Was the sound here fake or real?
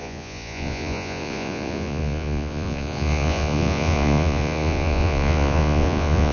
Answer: fake